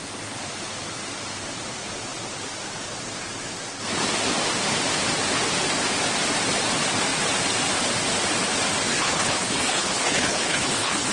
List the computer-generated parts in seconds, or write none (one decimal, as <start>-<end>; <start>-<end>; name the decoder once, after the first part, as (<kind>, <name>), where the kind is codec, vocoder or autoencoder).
8.9-11.1 (codec, HILCodec)